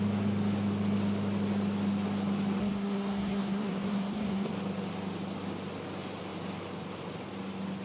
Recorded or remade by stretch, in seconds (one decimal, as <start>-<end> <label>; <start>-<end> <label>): 0.0-2.6 recorded; 2.6-4.5 remade; 4.5-7.8 recorded